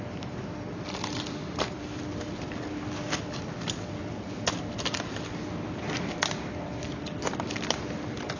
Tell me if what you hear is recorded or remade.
recorded